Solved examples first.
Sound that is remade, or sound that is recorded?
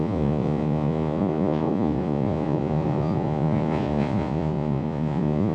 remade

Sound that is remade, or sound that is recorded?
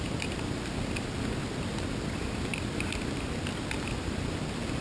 recorded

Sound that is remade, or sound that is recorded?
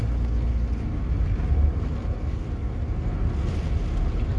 recorded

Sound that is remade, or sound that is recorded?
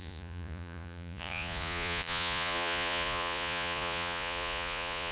remade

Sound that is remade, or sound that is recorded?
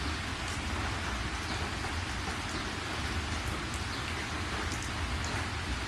recorded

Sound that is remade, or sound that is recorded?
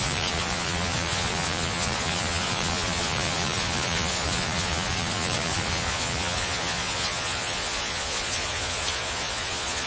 remade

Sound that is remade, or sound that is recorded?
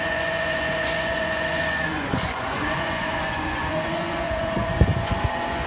remade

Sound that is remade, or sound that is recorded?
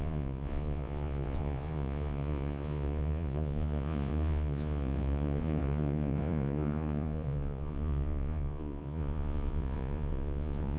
remade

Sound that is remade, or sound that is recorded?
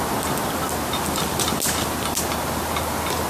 recorded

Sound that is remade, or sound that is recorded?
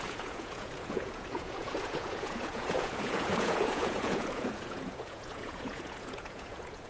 remade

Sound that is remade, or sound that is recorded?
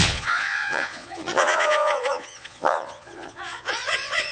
remade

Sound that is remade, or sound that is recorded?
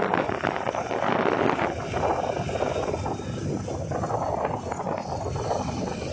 recorded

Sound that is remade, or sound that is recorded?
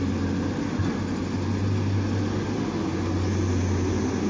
recorded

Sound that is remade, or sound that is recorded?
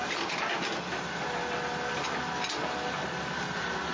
recorded